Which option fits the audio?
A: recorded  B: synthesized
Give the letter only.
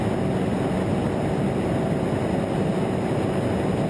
A